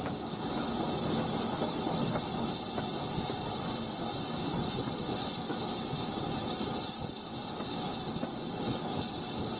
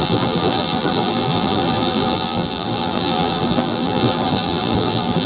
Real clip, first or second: first